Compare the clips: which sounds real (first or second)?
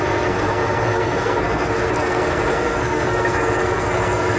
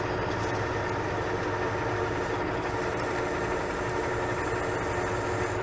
second